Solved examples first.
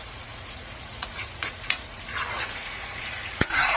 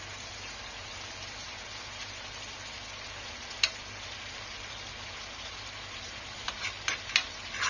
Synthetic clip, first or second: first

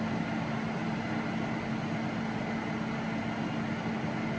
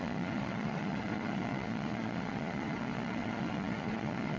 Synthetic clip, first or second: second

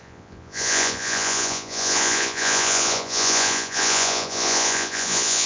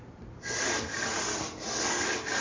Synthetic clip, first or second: first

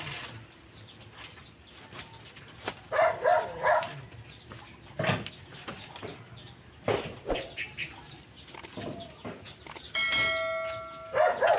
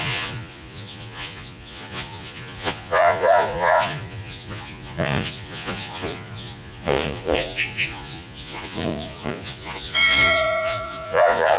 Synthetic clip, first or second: second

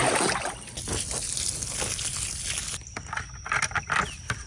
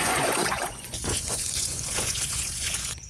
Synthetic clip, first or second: second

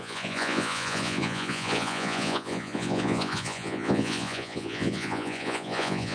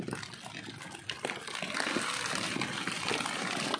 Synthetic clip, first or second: first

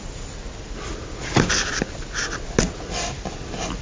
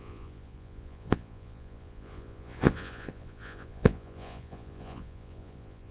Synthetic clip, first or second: second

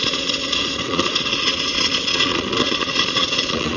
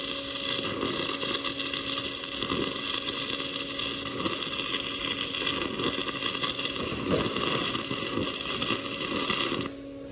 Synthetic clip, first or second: first